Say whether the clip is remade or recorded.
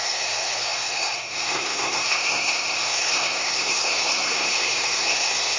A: remade